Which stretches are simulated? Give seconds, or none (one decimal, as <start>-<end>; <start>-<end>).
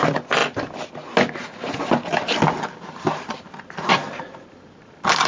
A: 0.0-0.4; 1.8-5.3